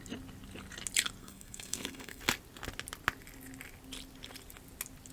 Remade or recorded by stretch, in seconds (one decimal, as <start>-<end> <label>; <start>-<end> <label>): 0.0-1.2 recorded; 1.2-2.2 remade; 2.2-5.1 recorded

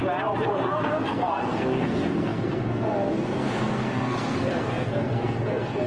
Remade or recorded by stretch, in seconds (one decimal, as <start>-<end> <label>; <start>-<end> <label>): 0.0-0.5 recorded; 0.5-5.9 remade

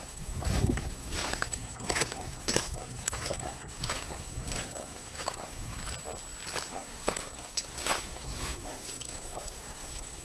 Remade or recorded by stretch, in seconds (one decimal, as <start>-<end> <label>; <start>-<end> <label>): 0.0-5.8 remade; 5.8-6.7 recorded; 6.7-10.2 remade

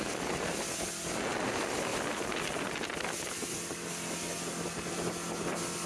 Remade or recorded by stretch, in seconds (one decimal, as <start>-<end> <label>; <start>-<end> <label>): 0.0-5.9 recorded

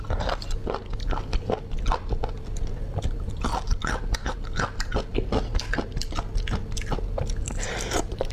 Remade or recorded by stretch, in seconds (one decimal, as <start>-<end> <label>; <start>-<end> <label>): 0.0-8.3 recorded